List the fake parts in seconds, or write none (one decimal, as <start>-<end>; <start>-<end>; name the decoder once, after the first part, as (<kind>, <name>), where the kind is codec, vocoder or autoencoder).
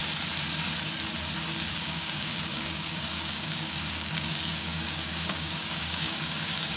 1.7-6.8 (codec, DAC)